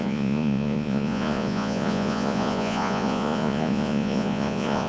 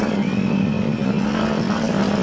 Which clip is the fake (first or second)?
first